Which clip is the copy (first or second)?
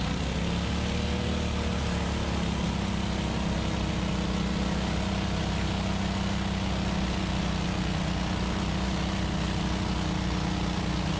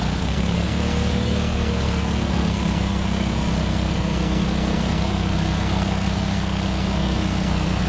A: second